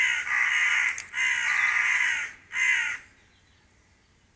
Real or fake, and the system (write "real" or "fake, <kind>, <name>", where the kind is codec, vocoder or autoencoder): real